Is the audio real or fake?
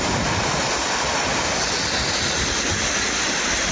real